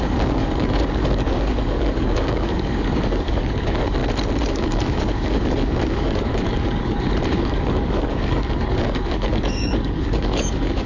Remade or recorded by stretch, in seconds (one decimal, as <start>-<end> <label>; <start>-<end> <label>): 0.0-4.0 remade; 4.0-4.5 recorded; 4.5-10.9 remade